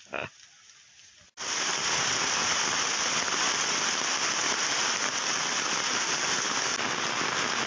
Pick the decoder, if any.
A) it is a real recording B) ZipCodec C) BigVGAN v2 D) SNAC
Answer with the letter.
A